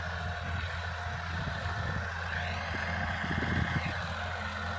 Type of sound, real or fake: real